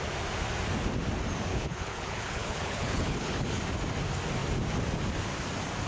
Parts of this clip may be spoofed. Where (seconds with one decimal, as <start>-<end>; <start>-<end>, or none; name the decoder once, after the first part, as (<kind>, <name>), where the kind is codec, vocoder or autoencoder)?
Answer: 1.5-3.6 (codec, HILCodec)